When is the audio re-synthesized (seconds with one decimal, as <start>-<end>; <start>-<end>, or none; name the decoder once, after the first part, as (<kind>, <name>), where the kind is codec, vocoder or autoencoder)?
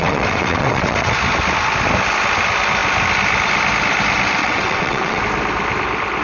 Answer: 0.0-1.1 (vocoder, WaveNeXt); 4.4-5.2